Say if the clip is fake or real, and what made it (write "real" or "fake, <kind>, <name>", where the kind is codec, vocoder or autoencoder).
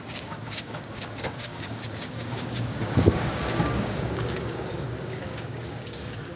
fake, codec, DAC